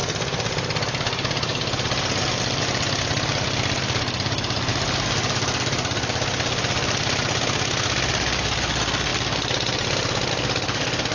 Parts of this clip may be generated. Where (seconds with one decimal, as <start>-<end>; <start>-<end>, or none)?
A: none